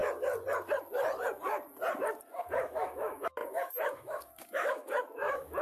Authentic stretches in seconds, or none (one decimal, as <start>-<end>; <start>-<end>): 0.0-2.3